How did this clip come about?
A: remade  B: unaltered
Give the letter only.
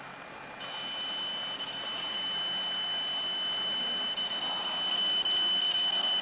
B